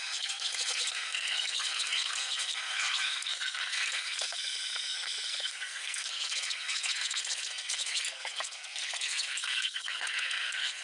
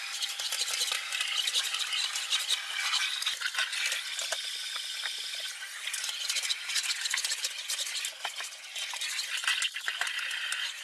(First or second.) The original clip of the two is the second